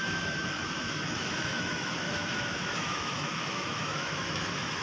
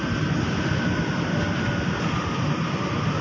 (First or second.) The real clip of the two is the second